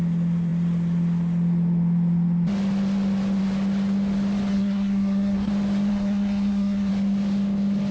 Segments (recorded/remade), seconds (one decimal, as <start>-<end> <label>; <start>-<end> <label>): 0.0-4.5 recorded; 4.5-5.5 remade; 5.5-5.9 recorded; 5.9-6.9 remade; 6.9-7.9 recorded